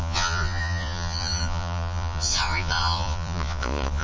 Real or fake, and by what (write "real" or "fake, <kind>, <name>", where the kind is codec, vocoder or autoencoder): fake, vocoder, Vocos